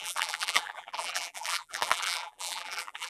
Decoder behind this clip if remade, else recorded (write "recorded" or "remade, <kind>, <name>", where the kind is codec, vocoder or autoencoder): remade, vocoder, BigVGAN v2